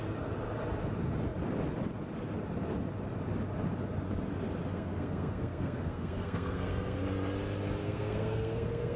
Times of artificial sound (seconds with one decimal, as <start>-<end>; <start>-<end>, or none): 4.7-7.0; 7.8-9.0